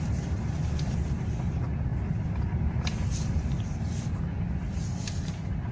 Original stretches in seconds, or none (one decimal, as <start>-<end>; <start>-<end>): 0.0-5.7